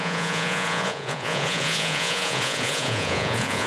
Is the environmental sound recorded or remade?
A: remade